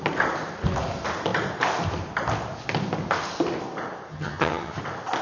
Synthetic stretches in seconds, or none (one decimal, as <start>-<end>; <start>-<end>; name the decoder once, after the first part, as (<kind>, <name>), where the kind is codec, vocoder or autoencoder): 4.1-4.8 (vocoder, HiFi-GAN)